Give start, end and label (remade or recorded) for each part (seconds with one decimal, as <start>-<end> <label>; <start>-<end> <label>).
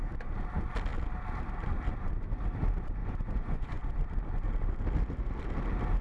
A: 0.0-3.0 recorded; 3.0-3.8 remade; 3.8-6.0 recorded